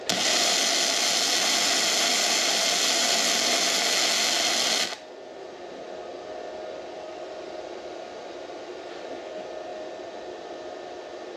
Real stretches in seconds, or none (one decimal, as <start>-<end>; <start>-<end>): 0.0-11.4